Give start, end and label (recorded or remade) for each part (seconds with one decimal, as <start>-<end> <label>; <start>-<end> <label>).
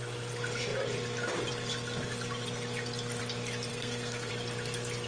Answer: 0.0-3.7 recorded; 3.7-4.3 remade; 4.3-5.1 recorded